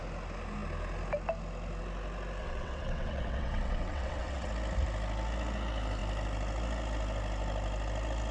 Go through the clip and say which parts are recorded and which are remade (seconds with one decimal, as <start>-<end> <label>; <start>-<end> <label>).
0.0-2.4 recorded; 2.4-4.5 remade; 4.5-8.3 recorded